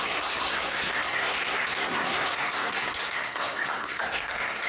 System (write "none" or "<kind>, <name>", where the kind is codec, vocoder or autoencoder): codec, SNAC